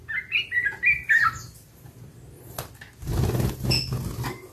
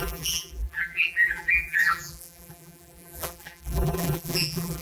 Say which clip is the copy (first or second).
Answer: second